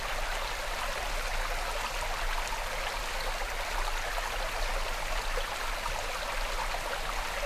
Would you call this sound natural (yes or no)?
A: yes